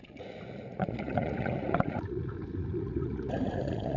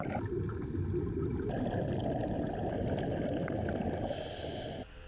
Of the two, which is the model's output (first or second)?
first